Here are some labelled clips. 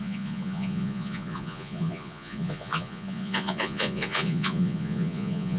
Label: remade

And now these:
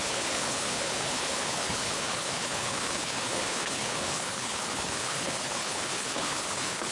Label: remade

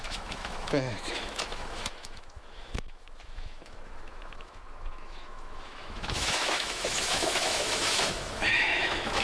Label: remade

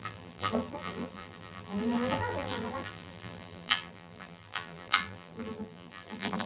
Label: remade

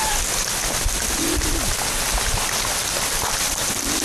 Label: recorded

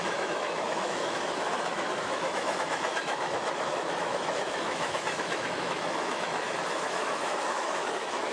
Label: remade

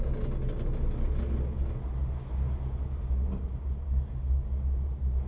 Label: recorded